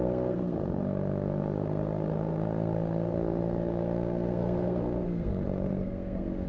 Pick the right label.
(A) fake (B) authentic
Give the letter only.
A